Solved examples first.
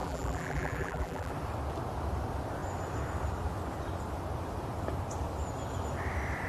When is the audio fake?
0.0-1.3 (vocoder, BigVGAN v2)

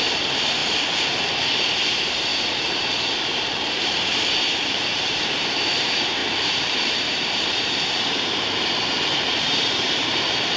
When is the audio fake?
0.0-0.6 (vocoder, BigVGAN v2); 1.7-2.3; 3.1-10.6

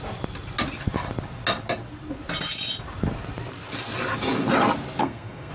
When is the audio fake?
5.0-5.5 (codec, SNAC)

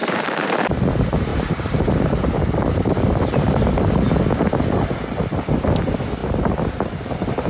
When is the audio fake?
0.0-0.5 (vocoder, BigVGAN v2); 1.3-4.1; 6.2-7.5

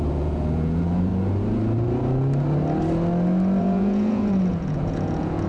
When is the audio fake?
0.0-1.1 (vocoder, Vocos); 3.6-5.5

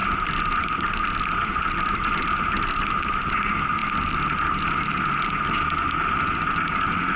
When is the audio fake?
0.0-2.2 (vocoder, BigVGAN v2)